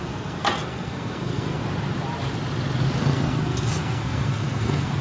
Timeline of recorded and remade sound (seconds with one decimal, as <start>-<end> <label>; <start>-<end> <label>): 0.0-1.6 remade; 1.6-3.0 recorded; 3.0-5.0 remade

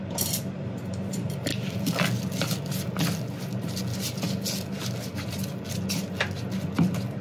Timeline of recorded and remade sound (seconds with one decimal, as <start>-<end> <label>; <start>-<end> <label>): 0.0-7.2 recorded

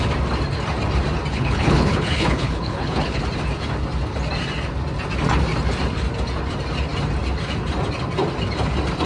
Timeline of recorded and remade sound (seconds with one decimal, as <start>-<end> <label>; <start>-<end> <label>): 0.0-1.3 recorded; 1.3-3.2 remade; 3.2-9.1 recorded

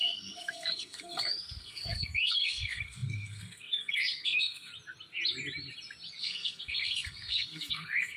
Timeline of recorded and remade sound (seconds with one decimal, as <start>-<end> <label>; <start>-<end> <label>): 0.0-4.7 remade; 4.7-6.2 recorded; 6.2-8.2 remade

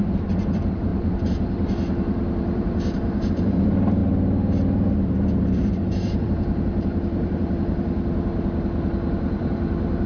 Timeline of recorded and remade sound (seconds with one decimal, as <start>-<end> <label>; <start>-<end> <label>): 0.0-4.0 remade; 4.0-5.5 recorded; 5.5-10.1 remade

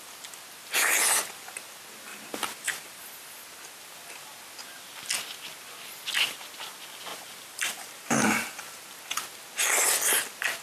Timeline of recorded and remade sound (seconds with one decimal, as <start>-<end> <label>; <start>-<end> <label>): 0.0-2.1 recorded; 2.1-3.0 remade; 3.0-7.1 recorded; 7.1-8.8 remade; 8.8-10.6 recorded

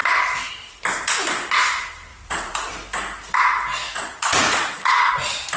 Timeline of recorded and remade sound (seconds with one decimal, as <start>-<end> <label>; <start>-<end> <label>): 0.0-2.1 recorded; 2.1-2.7 remade; 2.7-3.8 recorded; 3.8-5.1 remade; 5.1-5.6 recorded

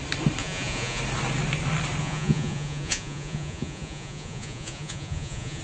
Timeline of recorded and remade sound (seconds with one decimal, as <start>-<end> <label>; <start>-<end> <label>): 0.0-0.4 recorded; 0.4-1.0 remade; 1.0-2.0 recorded; 2.0-5.6 remade